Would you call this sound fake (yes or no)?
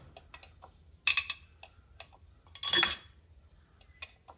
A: no